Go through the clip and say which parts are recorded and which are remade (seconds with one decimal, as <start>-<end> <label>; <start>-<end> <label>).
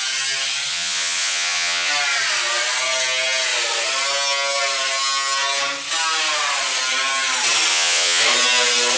0.0-0.7 recorded; 0.7-1.9 remade; 1.9-7.7 recorded; 7.7-8.2 remade; 8.2-9.0 recorded